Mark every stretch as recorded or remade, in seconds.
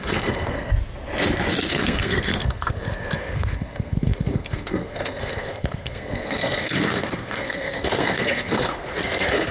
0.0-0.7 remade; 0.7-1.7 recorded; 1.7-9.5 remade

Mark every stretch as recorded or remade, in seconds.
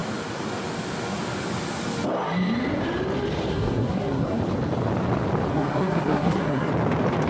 0.0-3.5 recorded; 3.5-4.4 remade; 4.4-5.5 recorded; 5.5-6.7 remade; 6.7-7.3 recorded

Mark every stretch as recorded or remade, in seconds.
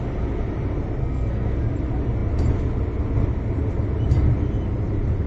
0.0-1.0 recorded; 1.0-1.6 remade; 1.6-5.3 recorded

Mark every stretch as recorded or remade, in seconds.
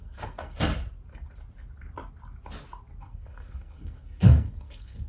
0.0-0.7 remade; 0.7-3.0 recorded; 3.0-5.1 remade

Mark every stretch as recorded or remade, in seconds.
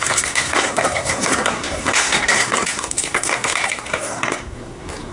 0.0-5.1 remade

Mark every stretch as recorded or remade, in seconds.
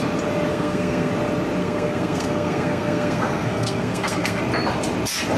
0.0-0.5 recorded; 0.5-1.1 remade; 1.1-1.6 recorded; 1.6-4.4 remade; 4.4-5.4 recorded